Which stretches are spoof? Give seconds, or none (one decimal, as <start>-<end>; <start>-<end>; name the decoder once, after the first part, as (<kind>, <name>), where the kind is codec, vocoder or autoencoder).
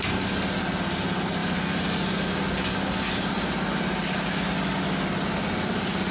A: none